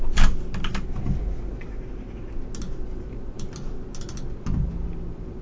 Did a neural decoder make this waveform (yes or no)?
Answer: no